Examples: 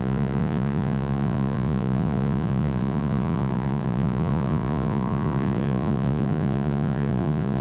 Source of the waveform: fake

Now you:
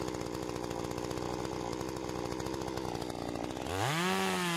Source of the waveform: real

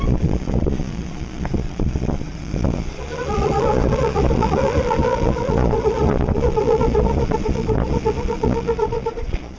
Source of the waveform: fake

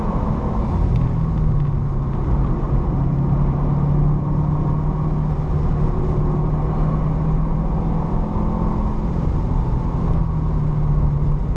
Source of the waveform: real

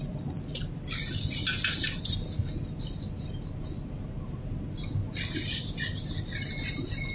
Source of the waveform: real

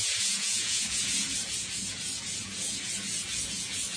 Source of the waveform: fake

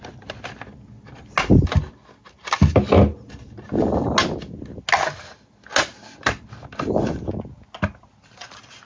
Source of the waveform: real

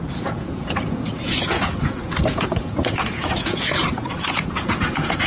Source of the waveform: fake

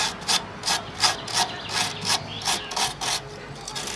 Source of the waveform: real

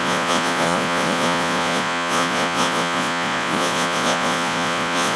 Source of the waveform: fake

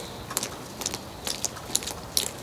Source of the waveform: real